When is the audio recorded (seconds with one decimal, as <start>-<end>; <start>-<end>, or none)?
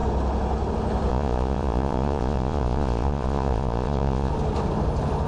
0.0-1.1; 4.3-5.3